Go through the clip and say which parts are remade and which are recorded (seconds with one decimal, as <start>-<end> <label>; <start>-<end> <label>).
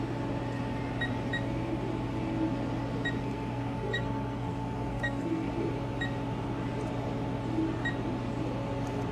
0.0-3.2 recorded; 3.2-5.5 remade; 5.5-9.1 recorded